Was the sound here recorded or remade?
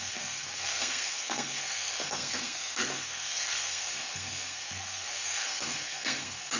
remade